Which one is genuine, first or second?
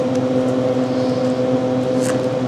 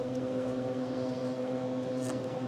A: first